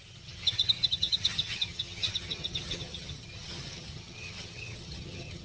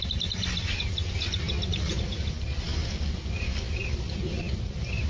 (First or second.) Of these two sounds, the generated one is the first